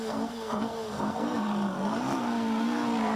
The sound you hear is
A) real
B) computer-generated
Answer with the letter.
B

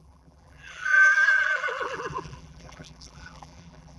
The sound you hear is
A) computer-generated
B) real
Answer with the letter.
A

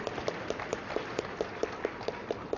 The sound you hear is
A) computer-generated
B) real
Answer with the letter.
A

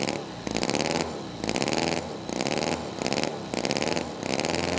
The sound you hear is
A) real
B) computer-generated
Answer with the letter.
A